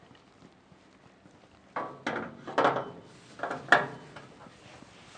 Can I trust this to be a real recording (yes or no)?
yes